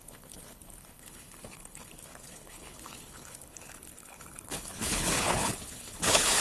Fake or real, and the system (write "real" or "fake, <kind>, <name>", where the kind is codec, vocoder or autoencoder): fake, codec, HILCodec